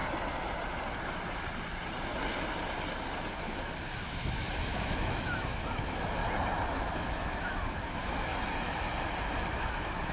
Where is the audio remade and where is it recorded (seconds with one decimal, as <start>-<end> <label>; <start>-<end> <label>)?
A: 0.0-3.3 recorded; 3.3-6.2 remade; 6.2-6.8 recorded; 6.8-8.3 remade; 8.3-9.5 recorded; 9.5-10.1 remade